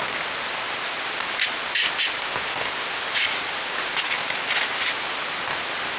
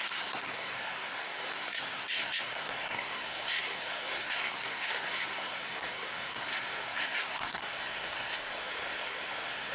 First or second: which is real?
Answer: first